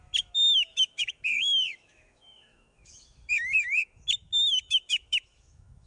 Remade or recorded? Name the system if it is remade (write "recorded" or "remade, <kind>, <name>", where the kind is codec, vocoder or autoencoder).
remade, autoencoder, DAC-VAE